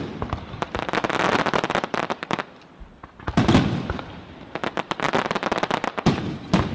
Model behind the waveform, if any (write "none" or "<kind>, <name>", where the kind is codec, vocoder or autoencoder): vocoder, BigVGAN v2